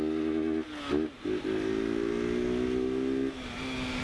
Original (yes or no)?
yes